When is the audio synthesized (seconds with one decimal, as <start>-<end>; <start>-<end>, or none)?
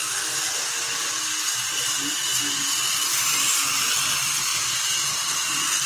4.5-5.5